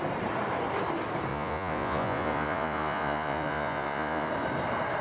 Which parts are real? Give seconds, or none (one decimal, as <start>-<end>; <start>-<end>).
0.0-1.3; 4.3-5.0